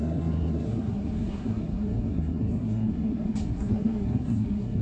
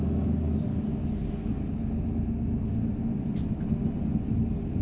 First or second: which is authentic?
second